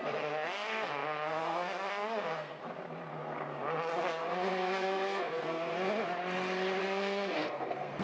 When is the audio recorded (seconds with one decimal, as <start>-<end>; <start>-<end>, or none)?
2.6-4.0; 5.7-6.8